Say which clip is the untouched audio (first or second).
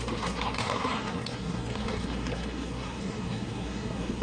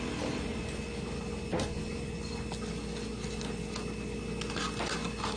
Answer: second